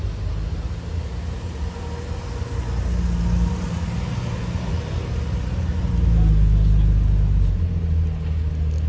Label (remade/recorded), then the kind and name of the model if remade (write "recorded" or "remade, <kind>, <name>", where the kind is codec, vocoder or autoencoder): recorded